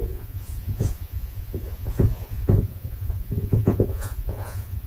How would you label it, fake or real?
fake